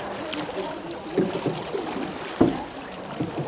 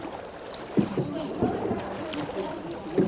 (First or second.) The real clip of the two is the second